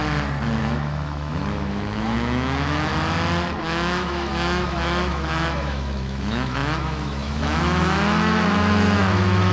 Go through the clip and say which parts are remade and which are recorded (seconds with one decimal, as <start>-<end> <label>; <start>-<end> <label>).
0.0-0.6 recorded; 0.6-2.9 remade; 2.9-3.6 recorded; 3.6-9.5 remade